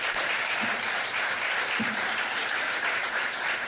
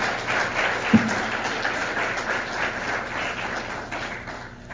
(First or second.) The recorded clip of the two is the second